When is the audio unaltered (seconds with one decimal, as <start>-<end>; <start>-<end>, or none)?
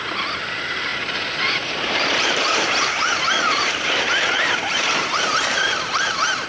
none